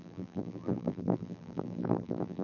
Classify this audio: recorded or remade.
remade